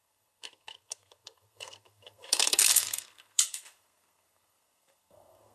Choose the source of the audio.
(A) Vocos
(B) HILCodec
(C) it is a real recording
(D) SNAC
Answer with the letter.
D